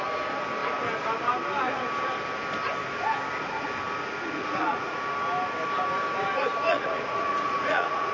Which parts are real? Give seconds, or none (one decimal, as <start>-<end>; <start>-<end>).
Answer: 0.0-4.4; 5.0-6.7